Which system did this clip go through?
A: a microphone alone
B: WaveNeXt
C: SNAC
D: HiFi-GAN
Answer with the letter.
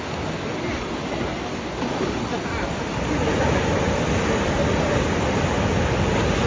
A